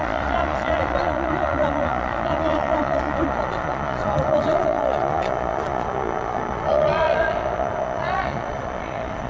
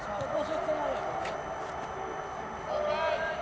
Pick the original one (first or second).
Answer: second